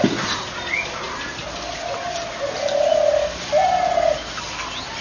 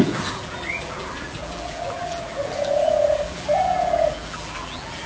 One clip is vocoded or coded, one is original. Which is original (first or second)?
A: first